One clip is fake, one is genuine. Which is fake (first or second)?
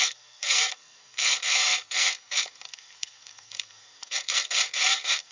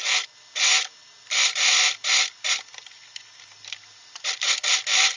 first